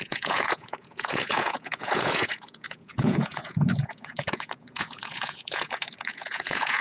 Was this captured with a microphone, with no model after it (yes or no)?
no